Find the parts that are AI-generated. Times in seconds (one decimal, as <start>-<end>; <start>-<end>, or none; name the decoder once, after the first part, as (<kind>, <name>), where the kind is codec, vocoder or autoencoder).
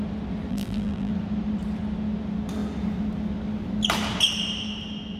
0.5-1.1 (vocoder, BigVGAN v2)